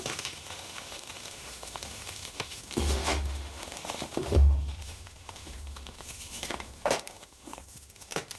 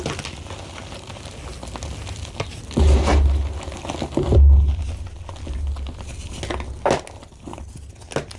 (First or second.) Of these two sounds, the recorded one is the second